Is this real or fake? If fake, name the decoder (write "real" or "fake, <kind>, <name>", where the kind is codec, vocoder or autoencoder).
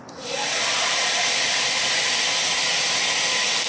real